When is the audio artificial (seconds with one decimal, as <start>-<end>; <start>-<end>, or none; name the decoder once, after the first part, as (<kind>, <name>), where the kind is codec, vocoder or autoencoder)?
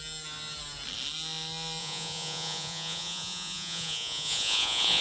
1.8-5.0 (vocoder, Vocos)